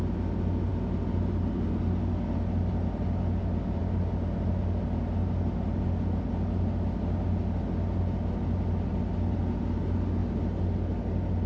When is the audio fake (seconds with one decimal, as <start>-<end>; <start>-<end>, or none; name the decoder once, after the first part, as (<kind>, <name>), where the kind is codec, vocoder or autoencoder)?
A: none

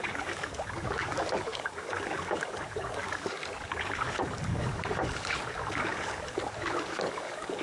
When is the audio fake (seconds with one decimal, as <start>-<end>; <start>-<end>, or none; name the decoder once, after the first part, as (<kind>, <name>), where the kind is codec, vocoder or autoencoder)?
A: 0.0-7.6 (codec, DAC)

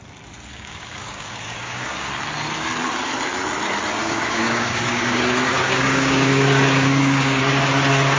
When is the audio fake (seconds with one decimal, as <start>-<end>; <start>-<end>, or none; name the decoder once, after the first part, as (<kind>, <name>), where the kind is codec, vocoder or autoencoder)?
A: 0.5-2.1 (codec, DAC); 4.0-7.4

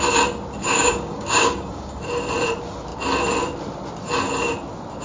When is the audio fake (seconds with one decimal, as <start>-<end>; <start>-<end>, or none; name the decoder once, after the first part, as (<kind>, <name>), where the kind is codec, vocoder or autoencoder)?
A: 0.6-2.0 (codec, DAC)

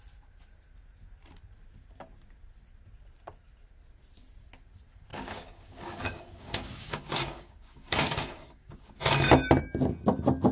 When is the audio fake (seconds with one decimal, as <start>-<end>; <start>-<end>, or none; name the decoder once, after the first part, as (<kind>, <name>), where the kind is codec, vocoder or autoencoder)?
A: 5.1-8.9 (codec, DAC)